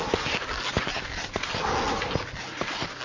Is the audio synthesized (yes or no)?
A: no